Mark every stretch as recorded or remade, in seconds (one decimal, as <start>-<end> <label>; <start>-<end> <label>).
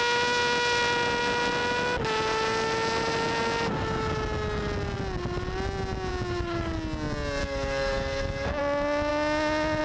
0.0-7.4 recorded; 7.4-8.6 remade; 8.6-9.8 recorded